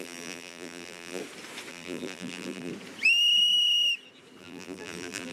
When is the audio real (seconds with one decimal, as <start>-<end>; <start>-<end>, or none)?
1.2-1.7; 2.7-4.4

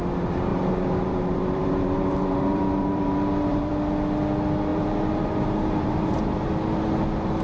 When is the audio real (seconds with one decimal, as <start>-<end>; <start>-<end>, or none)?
0.0-0.5; 3.7-4.7; 6.5-7.4

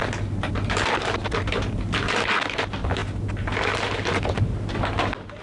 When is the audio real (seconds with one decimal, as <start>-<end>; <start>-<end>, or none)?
0.0-5.4